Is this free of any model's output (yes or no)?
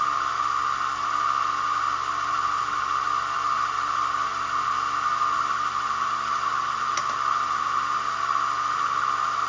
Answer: yes